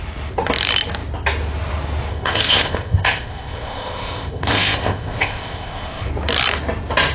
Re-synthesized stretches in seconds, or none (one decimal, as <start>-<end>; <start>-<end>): 2.1-6.1